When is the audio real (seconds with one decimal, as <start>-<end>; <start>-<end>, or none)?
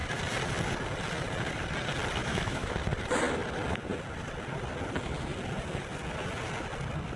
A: 0.0-2.2; 2.7-7.2